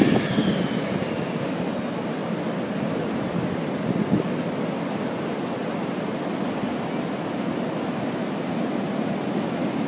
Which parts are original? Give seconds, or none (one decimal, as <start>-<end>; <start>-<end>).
0.0-9.9